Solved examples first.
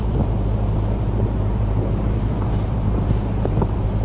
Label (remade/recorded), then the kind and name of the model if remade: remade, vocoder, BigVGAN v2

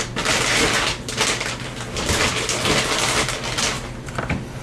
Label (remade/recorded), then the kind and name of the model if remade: recorded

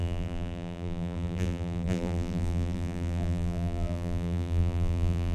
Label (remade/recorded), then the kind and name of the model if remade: remade, vocoder, BigVGAN v2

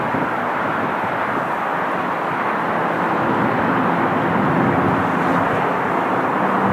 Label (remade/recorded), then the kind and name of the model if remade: recorded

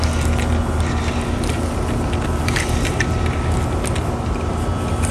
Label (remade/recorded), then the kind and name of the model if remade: recorded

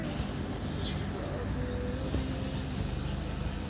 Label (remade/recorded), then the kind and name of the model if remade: recorded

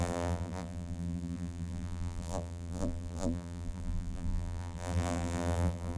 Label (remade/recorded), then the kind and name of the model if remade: remade, vocoder, BigVGAN v2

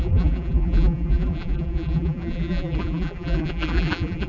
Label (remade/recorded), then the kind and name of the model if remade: remade, vocoder, BigVGAN v2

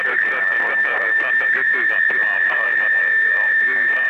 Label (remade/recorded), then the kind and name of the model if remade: remade, vocoder, BigVGAN v2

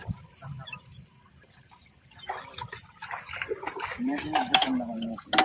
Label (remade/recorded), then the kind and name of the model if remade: remade, vocoder, BigVGAN v2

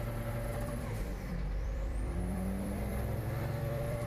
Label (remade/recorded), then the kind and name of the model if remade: remade, vocoder, BigVGAN v2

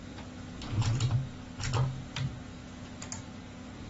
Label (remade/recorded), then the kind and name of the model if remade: recorded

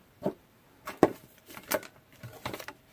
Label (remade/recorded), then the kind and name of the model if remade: remade, vocoder, BigVGAN v2